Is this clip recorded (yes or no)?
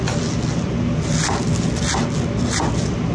yes